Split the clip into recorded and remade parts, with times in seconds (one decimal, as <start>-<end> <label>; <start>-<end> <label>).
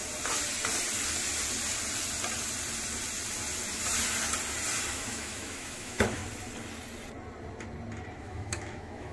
0.0-4.9 recorded; 4.9-6.2 remade; 6.2-8.2 recorded; 8.2-9.1 remade